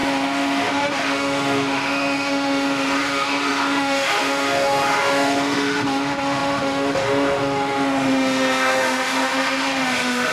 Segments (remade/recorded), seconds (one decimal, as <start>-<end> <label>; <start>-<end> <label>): 0.0-10.3 remade